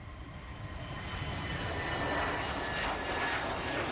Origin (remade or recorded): recorded